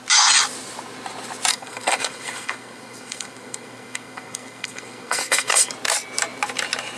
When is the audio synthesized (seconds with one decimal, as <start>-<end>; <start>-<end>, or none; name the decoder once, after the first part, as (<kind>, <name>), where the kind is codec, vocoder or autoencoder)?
1.5-5.7 (codec, SNAC)